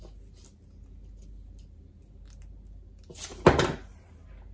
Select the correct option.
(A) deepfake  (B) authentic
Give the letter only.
B